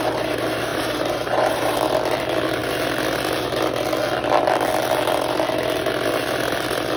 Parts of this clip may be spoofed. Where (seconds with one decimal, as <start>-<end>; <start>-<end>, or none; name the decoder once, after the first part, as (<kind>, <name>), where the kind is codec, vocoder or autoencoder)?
none